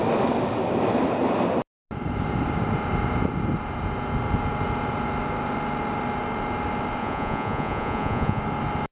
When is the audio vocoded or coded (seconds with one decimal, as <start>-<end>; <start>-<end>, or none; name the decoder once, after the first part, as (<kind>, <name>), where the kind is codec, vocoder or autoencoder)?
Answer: 7.0-8.4 (vocoder, Vocos)

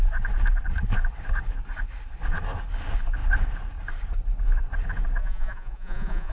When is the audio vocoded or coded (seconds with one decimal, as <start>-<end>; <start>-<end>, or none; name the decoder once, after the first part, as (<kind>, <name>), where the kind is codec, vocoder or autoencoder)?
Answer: 5.2-6.3 (vocoder, Vocos)

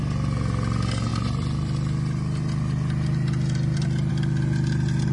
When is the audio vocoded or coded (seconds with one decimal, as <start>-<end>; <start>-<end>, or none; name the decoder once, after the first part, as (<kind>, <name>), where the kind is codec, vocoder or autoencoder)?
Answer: 1.1-4.1 (vocoder, BigVGAN v2)